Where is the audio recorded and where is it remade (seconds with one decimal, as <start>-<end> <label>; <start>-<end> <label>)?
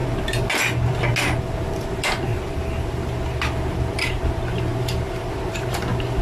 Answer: 0.0-2.3 recorded; 2.3-4.0 remade; 4.0-4.7 recorded; 4.7-5.3 remade; 5.3-6.2 recorded